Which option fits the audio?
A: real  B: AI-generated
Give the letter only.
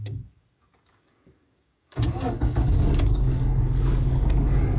B